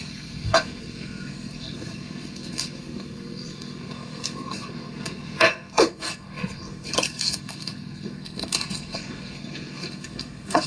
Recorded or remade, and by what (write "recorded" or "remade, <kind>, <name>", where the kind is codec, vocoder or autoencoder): remade, codec, SNAC